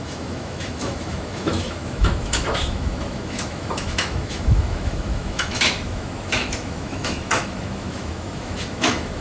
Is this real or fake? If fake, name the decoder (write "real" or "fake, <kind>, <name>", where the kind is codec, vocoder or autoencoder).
fake, autoencoder, DAC-VAE